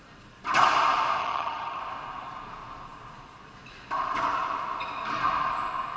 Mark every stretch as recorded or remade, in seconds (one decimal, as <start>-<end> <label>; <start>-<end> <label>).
0.0-1.2 recorded; 1.2-1.8 remade; 1.8-6.0 recorded